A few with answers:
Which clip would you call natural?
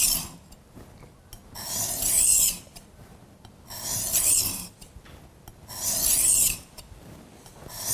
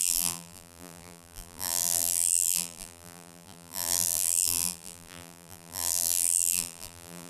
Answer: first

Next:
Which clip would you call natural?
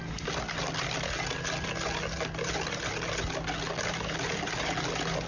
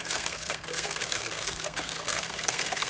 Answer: first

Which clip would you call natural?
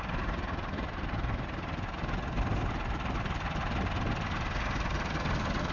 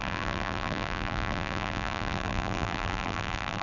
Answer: first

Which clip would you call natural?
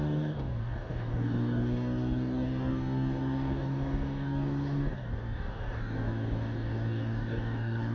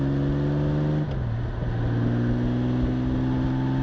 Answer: second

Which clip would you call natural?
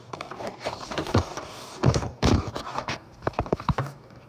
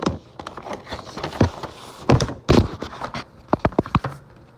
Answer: second